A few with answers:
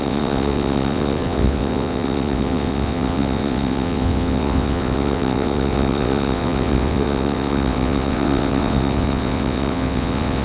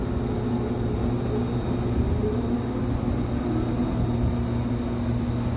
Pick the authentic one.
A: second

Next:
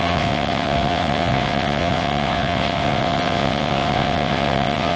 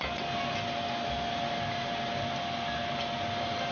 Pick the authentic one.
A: second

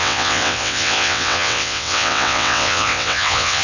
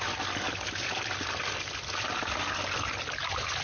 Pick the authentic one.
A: second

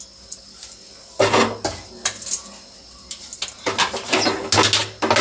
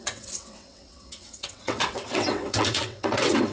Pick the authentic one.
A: first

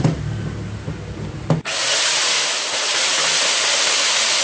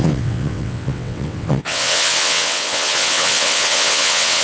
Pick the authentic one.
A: first